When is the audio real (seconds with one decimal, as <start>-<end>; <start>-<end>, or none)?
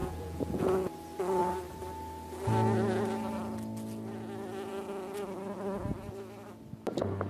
0.9-7.3